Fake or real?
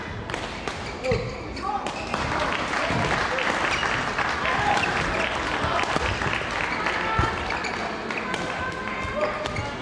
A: real